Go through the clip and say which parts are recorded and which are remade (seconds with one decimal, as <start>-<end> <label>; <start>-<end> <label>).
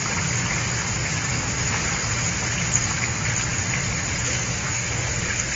0.0-4.6 recorded; 4.6-5.1 remade; 5.1-5.6 recorded